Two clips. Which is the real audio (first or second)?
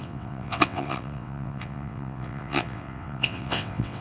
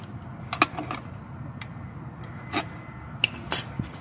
second